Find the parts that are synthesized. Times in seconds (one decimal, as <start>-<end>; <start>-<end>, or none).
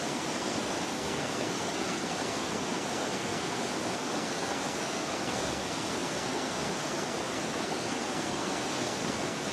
0.0-9.5